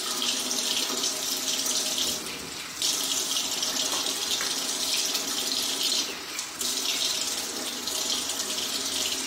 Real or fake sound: real